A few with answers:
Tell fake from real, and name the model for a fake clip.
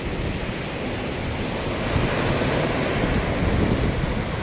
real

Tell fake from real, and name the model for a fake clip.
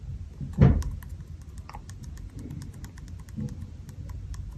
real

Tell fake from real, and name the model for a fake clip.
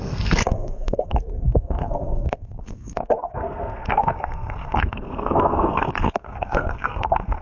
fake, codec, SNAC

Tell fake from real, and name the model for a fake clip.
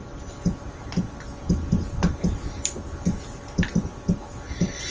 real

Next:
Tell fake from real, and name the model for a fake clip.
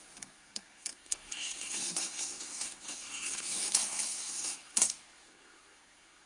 fake, codec, SNAC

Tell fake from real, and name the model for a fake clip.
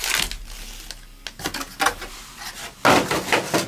real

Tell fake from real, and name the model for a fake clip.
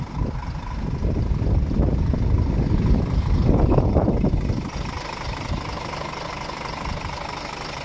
real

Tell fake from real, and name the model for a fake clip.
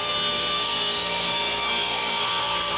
fake, codec, SNAC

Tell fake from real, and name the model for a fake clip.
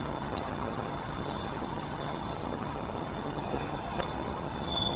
fake, vocoder, HiFi-GAN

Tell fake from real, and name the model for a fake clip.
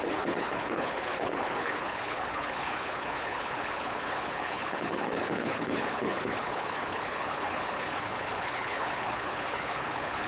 fake, codec, HILCodec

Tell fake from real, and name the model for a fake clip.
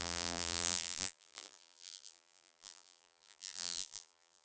fake, vocoder, BigVGAN v2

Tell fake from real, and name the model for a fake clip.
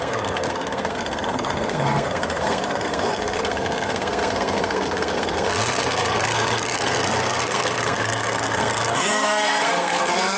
fake, codec, SNAC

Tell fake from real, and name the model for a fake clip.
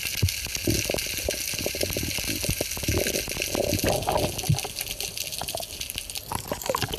real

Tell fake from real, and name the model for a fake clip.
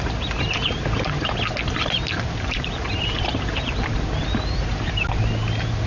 real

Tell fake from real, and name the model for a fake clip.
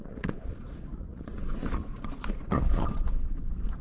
fake, vocoder, Vocos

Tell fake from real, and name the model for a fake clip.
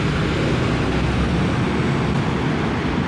real